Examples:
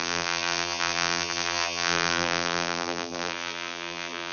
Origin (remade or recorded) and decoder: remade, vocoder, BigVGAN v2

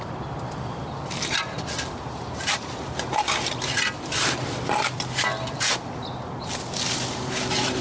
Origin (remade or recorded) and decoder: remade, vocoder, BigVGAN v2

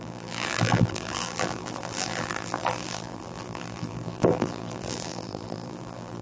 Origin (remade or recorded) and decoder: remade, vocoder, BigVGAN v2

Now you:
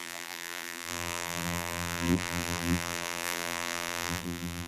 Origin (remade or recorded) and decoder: remade, vocoder, BigVGAN v2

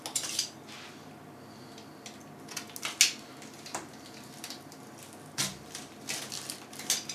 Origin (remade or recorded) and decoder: recorded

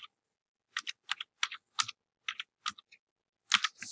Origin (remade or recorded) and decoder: recorded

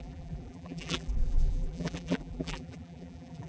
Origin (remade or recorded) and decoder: remade, vocoder, BigVGAN v2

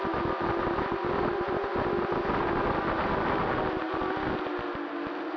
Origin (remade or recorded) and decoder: recorded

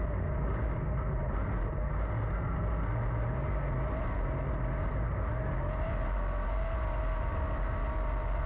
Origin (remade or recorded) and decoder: recorded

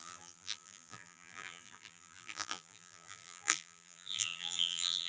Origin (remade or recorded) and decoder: remade, vocoder, BigVGAN v2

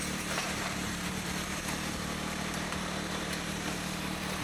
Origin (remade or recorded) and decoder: remade, vocoder, BigVGAN v2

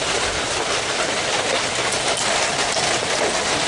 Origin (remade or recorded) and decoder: recorded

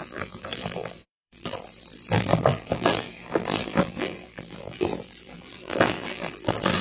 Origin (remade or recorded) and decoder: remade, vocoder, BigVGAN v2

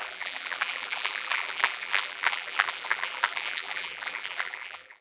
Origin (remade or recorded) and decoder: remade, vocoder, BigVGAN v2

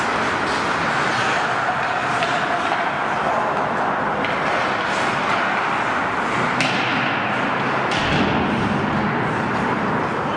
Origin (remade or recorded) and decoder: recorded